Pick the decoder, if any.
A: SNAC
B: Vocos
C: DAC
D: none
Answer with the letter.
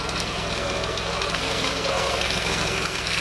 A